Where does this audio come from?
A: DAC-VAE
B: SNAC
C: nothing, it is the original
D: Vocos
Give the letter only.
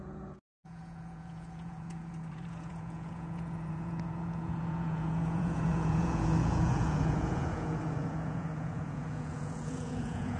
D